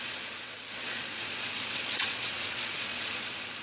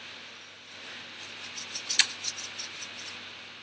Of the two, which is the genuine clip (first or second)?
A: second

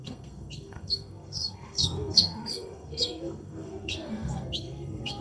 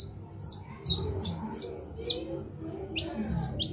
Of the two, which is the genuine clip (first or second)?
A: second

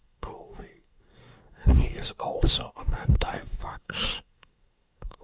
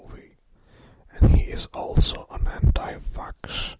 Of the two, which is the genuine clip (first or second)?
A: second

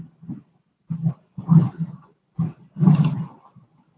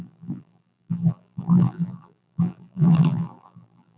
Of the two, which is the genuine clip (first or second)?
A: first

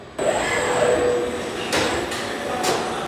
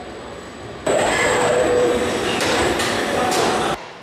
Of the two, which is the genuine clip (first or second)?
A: first